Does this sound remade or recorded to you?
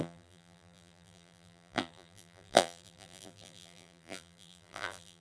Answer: remade